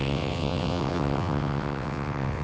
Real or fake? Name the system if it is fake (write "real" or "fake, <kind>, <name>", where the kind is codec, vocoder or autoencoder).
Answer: fake, vocoder, WaveNeXt